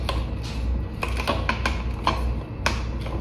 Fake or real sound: real